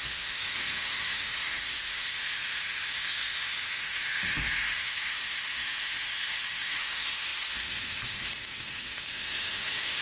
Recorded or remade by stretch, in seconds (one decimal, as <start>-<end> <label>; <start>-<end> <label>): 0.0-10.0 remade